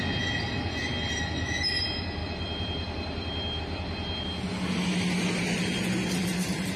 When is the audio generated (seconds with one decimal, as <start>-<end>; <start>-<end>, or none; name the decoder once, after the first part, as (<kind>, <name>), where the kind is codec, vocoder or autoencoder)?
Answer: none